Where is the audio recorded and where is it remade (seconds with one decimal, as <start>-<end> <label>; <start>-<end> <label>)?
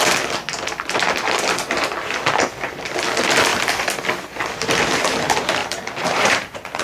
0.0-5.6 recorded; 5.6-6.8 remade